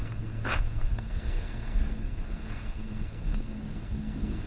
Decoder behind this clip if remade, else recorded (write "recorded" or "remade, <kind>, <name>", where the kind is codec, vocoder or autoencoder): remade, codec, SNAC